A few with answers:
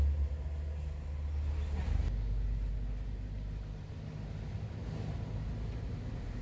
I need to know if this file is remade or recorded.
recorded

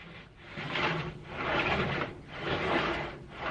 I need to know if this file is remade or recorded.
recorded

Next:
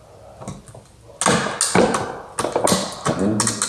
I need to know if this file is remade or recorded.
recorded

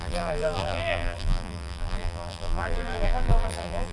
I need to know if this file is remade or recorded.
remade